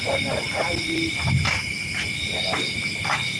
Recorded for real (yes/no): no